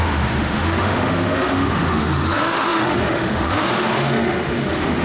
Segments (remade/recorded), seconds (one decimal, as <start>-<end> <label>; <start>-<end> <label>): 0.0-5.0 remade